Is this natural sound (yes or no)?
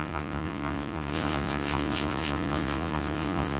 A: no